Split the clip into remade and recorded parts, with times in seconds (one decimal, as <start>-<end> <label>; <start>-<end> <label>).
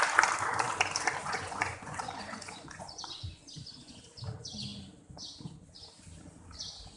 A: 0.0-1.2 recorded; 1.2-4.0 remade; 4.0-7.0 recorded